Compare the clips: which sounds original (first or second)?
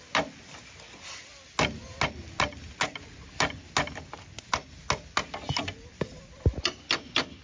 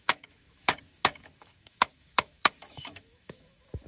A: first